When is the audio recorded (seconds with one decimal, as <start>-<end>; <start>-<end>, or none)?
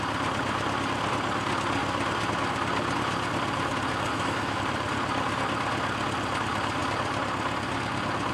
0.0-4.1; 4.6-8.3